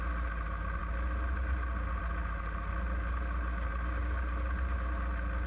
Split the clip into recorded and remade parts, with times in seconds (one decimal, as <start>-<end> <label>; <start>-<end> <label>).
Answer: 0.0-5.5 recorded